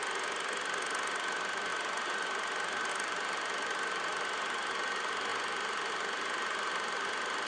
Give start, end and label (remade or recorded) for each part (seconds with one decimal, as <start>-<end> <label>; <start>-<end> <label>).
0.0-7.5 recorded